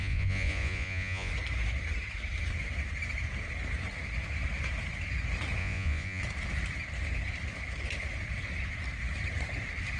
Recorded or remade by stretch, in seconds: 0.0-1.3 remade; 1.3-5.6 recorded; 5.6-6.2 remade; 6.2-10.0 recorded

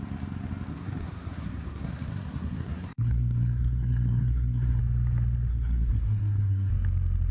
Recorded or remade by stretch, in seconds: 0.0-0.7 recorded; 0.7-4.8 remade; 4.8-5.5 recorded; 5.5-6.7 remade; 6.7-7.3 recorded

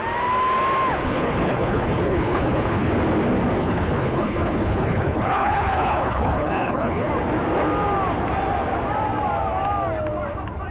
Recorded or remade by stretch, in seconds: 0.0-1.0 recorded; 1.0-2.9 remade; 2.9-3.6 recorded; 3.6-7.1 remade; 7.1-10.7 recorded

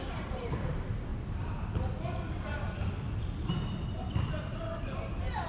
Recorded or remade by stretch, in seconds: 0.0-1.1 remade; 1.1-4.4 recorded; 4.4-5.5 remade

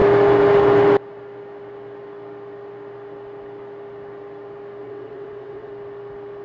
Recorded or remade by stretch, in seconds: 0.0-4.8 recorded; 4.8-5.7 remade; 5.7-6.4 recorded